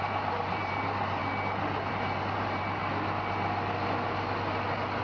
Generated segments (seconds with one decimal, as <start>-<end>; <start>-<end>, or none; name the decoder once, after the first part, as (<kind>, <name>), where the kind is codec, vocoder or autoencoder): 0.0-1.2 (vocoder, BigVGAN v2); 1.9-2.8